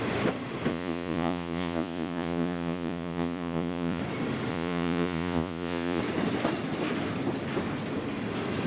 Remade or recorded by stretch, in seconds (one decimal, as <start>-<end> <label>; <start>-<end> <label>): 0.0-0.7 recorded; 0.7-4.0 remade; 4.0-4.5 recorded; 4.5-6.0 remade; 6.0-8.7 recorded